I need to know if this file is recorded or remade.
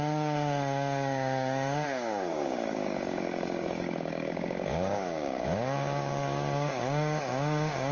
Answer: remade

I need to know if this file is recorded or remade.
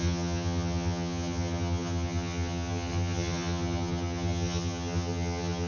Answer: remade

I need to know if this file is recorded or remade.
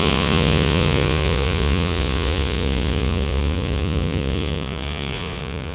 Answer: remade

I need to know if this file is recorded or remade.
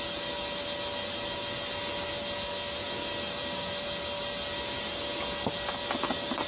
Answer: recorded